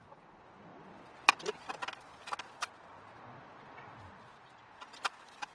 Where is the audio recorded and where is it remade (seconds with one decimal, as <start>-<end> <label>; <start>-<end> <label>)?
0.0-5.5 recorded